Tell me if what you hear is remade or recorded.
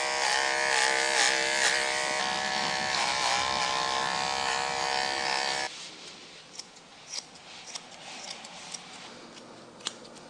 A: recorded